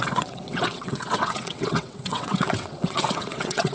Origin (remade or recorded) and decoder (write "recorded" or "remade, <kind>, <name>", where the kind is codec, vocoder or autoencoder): remade, vocoder, WaveNeXt